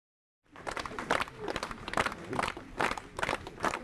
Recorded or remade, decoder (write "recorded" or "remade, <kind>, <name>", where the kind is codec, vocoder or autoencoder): remade, vocoder, BigVGAN v2